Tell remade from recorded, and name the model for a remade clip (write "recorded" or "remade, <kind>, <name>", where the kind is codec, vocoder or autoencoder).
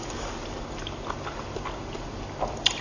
recorded